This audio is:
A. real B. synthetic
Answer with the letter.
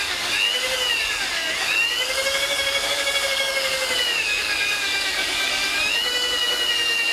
B